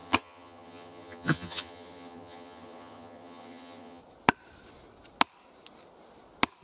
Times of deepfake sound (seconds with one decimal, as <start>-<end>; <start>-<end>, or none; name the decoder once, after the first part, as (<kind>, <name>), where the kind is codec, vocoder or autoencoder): 0.0-4.0 (vocoder, HiFi-GAN)